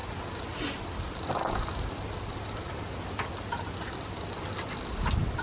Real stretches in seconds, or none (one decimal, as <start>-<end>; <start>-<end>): 0.0-5.4